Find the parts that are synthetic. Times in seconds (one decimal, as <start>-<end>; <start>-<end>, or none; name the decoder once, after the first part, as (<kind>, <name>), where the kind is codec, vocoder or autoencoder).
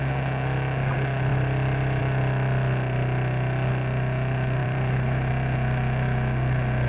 1.3-2.0 (vocoder, BigVGAN v2); 4.6-5.3